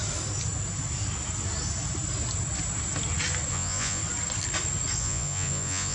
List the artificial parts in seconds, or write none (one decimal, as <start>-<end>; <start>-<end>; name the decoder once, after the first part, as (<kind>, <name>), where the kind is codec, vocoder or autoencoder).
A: 3.5-4.0 (vocoder, Vocos); 5.0-5.9